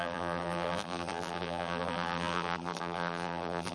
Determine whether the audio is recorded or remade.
remade